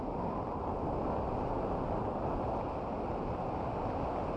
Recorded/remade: recorded